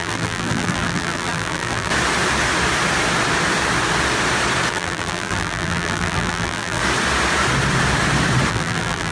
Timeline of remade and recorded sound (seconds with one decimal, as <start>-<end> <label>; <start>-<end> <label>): 0.0-1.9 remade; 1.9-4.7 recorded; 4.7-6.8 remade; 6.8-8.5 recorded; 8.5-9.1 remade